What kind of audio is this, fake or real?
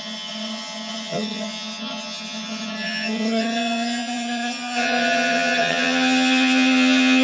fake